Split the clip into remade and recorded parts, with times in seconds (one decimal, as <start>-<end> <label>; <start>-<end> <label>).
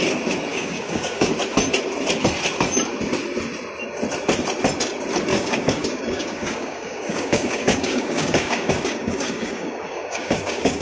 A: 0.0-0.5 recorded; 0.5-1.3 remade; 1.3-5.3 recorded; 5.3-10.8 remade